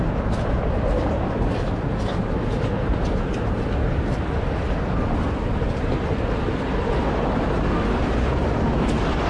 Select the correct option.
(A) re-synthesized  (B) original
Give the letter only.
B